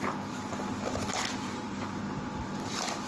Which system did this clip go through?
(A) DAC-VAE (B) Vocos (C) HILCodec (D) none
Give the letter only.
D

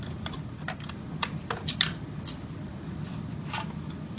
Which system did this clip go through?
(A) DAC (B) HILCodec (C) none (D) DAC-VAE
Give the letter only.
C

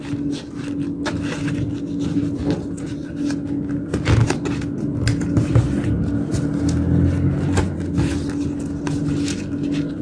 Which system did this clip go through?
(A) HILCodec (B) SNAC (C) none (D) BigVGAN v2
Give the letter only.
C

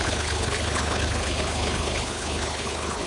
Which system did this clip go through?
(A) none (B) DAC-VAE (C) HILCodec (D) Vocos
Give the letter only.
C